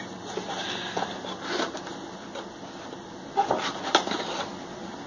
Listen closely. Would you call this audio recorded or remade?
recorded